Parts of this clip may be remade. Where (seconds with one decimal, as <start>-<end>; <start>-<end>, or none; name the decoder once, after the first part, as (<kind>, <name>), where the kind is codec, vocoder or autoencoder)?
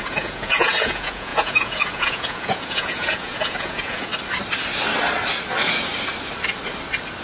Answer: 0.0-4.1 (vocoder, Vocos)